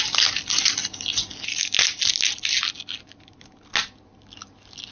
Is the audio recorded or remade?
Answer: recorded